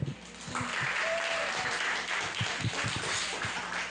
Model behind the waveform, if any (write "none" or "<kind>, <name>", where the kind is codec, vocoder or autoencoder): none